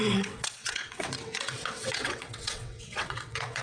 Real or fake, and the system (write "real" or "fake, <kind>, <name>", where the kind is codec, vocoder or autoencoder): fake, vocoder, WaveNeXt